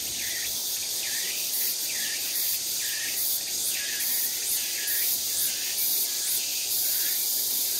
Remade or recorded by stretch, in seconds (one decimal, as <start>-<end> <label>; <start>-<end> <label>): 0.0-0.6 recorded; 0.6-3.2 remade; 3.2-6.5 recorded; 6.5-7.8 remade